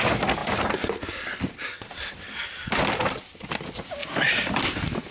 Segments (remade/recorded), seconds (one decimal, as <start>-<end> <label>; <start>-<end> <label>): 0.0-0.4 recorded; 0.4-3.5 remade; 3.5-4.0 recorded; 4.0-4.6 remade; 4.6-5.1 recorded